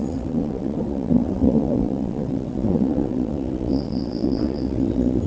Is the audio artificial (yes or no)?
yes